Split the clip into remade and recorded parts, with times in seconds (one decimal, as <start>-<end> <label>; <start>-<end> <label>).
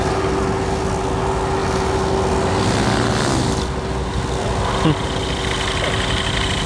0.0-6.7 recorded